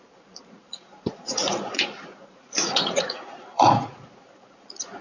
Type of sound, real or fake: fake